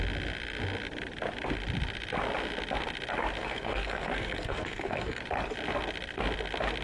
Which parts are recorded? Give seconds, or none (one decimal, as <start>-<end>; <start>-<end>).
0.0-3.4; 5.2-6.8